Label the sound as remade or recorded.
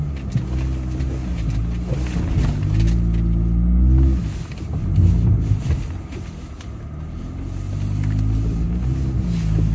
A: recorded